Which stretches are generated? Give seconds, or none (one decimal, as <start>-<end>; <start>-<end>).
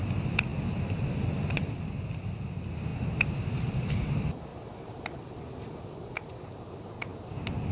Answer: 2.9-3.9